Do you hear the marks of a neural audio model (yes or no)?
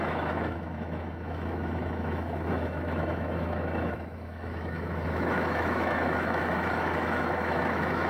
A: yes